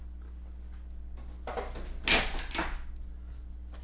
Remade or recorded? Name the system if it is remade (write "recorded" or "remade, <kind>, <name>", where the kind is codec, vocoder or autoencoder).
recorded